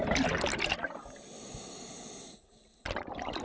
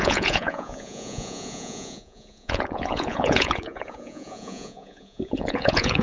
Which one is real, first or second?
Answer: first